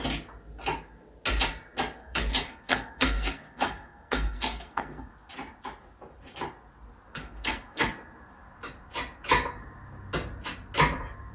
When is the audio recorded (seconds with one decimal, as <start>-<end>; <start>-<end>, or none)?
0.0-2.0; 5.1-7.1; 7.8-11.3